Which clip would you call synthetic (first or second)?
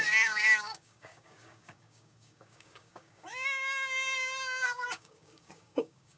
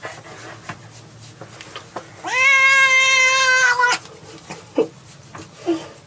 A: first